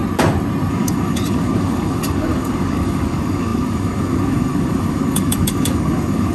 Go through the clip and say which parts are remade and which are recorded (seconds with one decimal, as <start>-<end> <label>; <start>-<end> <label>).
0.0-0.7 recorded; 0.7-6.3 remade